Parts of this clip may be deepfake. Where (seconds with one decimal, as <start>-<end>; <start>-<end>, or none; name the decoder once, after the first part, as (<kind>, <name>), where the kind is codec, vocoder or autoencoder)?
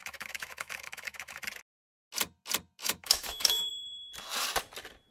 0.0-1.4 (autoencoder, DAC-VAE); 2.8-3.7